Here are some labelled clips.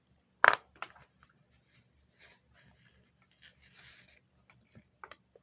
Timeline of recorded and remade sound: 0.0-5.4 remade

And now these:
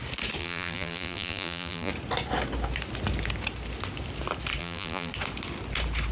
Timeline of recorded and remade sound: 0.0-0.4 recorded; 0.4-1.9 remade; 1.9-4.6 recorded; 4.6-5.1 remade; 5.1-6.1 recorded

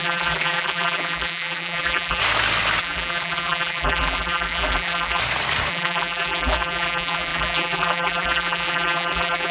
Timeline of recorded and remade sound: 0.0-2.2 remade; 2.2-2.8 recorded; 2.8-5.2 remade; 5.2-5.7 recorded; 5.7-9.5 remade

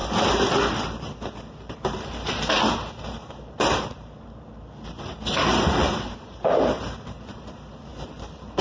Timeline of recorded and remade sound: 0.0-1.5 recorded; 1.5-8.6 remade

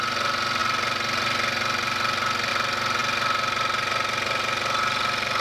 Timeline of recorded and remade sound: 0.0-5.4 recorded